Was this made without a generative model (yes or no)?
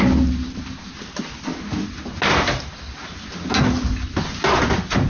yes